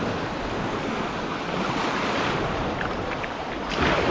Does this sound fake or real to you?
real